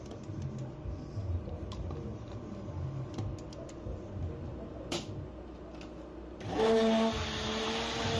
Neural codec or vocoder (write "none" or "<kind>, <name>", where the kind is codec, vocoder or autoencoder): none